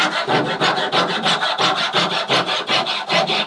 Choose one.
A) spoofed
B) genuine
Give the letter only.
B